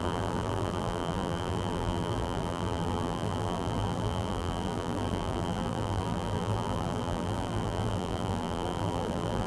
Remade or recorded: remade